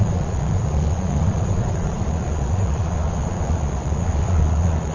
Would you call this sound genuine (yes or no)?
no